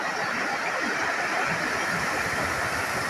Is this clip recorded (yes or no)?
no